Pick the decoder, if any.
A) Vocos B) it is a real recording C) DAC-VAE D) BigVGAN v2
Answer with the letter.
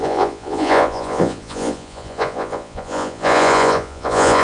A